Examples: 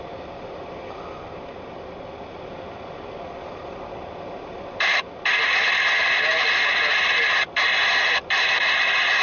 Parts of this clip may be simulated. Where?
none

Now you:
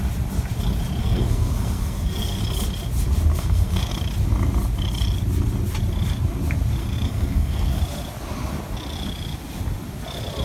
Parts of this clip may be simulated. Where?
1.0-2.4 (codec, SNAC); 3.3-3.9; 6.8-7.8

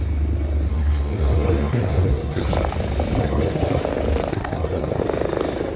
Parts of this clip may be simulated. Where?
0.7-2.4 (codec, SNAC); 3.2-3.8; 4.3-5.0

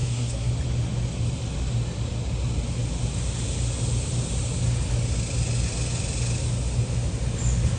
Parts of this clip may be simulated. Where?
0.0-0.5 (codec, SNAC)

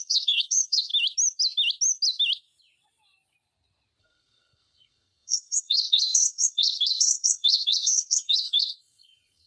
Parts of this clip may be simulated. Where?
0.0-0.9 (codec, SNAC); 4.0-9.5

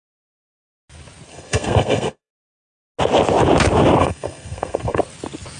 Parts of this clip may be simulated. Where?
1.3-2.3 (codec, SNAC); 4.0-5.0

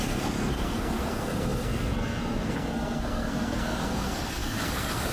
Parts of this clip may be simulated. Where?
0.0-5.1 (codec, SNAC)

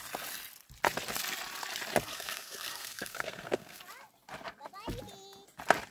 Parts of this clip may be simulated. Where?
2.1-3.8 (codec, SNAC)